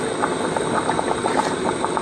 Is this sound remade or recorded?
recorded